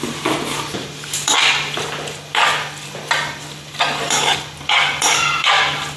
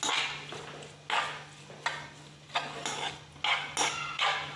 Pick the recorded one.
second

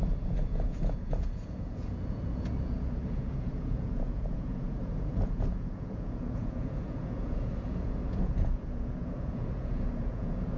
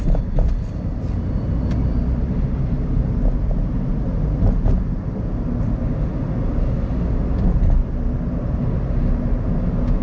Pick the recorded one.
second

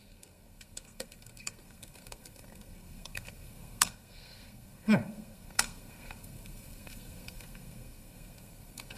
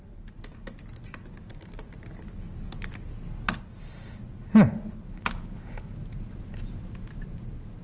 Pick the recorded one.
second